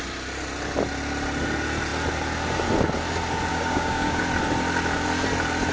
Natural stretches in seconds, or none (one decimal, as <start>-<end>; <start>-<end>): 0.0-3.5; 4.2-5.7